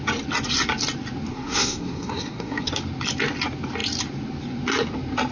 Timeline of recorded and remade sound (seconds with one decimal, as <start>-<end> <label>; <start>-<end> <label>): 0.0-1.3 recorded; 1.3-2.7 remade; 2.7-5.3 recorded